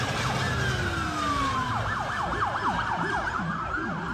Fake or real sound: real